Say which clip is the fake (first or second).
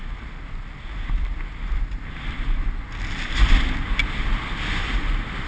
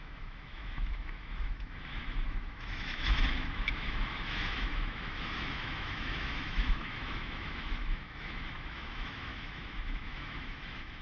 second